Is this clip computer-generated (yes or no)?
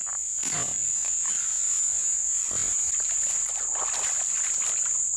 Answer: no